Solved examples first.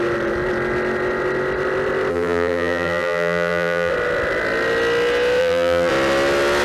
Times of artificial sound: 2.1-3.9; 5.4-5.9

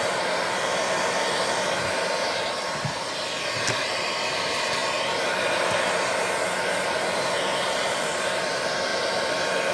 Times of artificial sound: 0.0-9.7

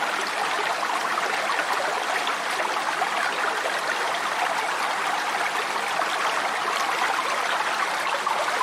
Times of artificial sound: none

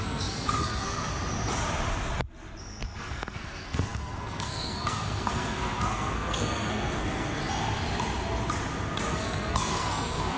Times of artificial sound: 0.0-1.1; 2.6-7.4; 9.1-10.4

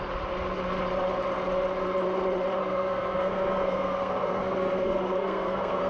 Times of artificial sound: 2.6-5.9

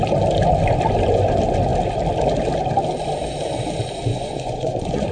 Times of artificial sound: 4.1-5.1

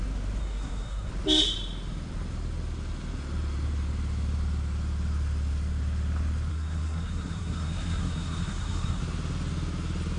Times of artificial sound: 0.4-1.1; 6.5-9.0

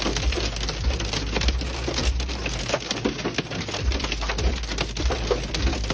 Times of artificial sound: none